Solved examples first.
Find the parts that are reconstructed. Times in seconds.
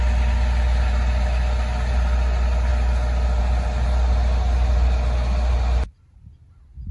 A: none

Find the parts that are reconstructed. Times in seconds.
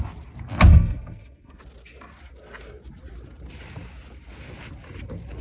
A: 0.7-1.6 (codec, SNAC)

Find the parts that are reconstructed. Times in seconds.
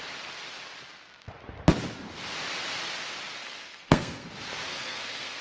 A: 3.4-4.3 (codec, SNAC); 4.7-5.4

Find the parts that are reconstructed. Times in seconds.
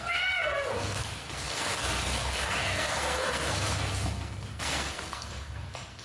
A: 0.0-6.0 (codec, SNAC)